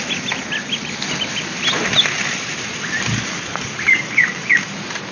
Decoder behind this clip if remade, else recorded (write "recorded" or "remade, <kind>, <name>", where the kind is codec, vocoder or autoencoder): recorded